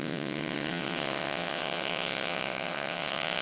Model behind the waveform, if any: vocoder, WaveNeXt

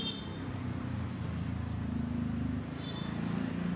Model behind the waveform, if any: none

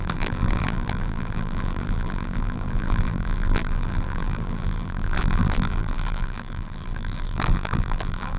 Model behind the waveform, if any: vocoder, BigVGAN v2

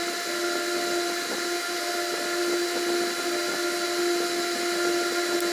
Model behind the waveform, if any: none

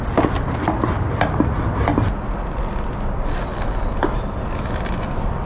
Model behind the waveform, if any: none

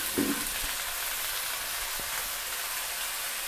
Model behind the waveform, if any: none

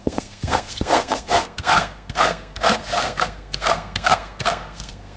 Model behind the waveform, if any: codec, SNAC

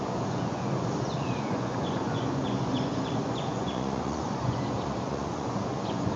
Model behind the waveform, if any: vocoder, Vocos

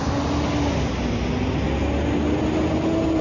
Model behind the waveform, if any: none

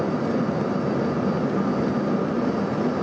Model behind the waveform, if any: none